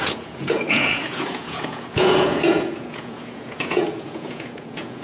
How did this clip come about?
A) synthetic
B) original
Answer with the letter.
A